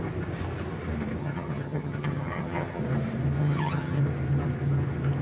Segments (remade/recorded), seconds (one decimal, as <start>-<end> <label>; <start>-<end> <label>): 0.0-1.2 recorded; 1.2-2.8 remade; 2.8-3.4 recorded; 3.4-4.0 remade; 4.0-5.2 recorded